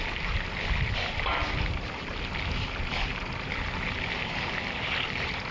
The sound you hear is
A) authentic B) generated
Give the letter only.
A